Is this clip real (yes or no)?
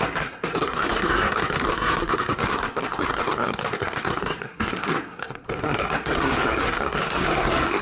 no